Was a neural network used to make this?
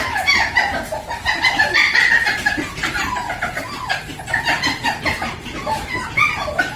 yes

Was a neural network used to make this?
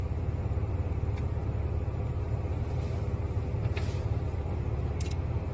no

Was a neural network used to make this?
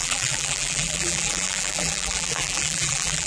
yes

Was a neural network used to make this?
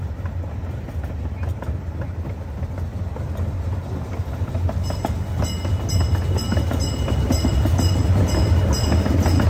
no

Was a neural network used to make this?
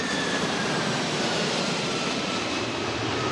yes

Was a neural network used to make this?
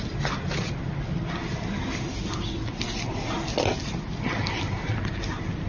no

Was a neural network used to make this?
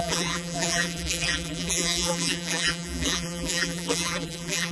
yes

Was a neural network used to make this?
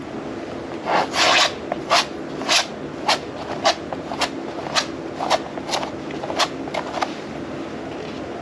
no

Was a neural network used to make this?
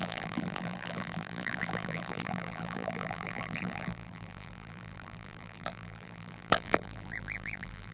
yes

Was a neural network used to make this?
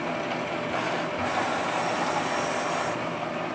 no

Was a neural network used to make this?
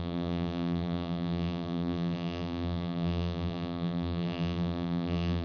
yes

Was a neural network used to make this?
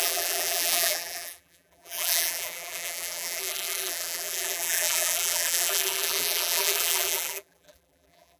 yes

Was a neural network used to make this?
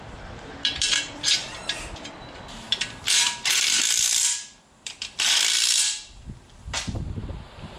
yes